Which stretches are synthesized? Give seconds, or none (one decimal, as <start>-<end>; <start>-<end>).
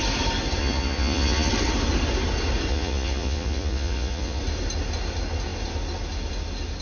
0.6-1.5; 2.7-4.4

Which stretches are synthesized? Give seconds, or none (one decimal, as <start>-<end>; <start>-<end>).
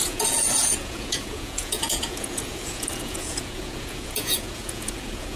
0.0-5.4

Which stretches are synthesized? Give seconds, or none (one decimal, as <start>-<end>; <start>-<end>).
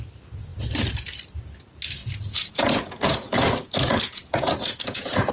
2.0-5.3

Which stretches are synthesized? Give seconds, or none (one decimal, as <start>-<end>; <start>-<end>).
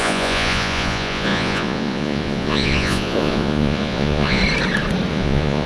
0.0-4.4; 5.1-5.7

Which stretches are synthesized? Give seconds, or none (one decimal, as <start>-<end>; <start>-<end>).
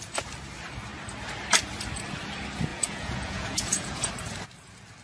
2.7-4.1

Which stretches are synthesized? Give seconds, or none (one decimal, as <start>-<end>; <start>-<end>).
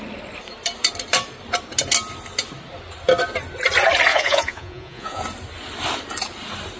4.1-5.2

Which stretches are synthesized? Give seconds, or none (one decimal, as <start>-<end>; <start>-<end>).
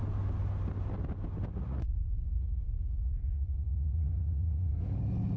1.5-4.7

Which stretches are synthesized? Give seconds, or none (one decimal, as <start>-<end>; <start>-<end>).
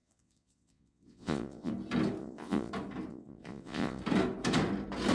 0.0-1.7; 2.2-2.7; 3.1-4.0